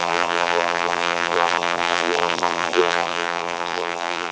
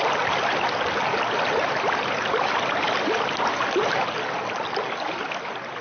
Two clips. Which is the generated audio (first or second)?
first